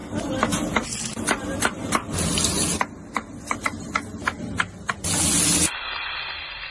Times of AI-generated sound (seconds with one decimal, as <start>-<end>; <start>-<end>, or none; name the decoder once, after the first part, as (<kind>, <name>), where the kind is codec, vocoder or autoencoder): 0.0-1.0 (vocoder, BigVGAN v2); 2.0-3.8